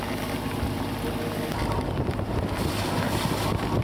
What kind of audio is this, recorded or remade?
recorded